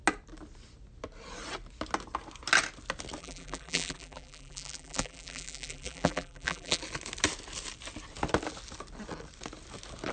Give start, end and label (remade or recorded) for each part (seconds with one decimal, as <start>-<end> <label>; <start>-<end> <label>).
0.0-3.2 recorded; 3.2-6.8 remade; 6.8-10.1 recorded